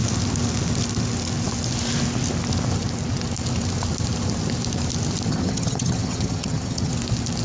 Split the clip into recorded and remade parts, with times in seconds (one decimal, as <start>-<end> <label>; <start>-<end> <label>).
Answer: 0.0-5.3 recorded; 5.3-6.9 remade; 6.9-7.4 recorded